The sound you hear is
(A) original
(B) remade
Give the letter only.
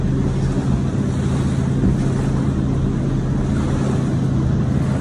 A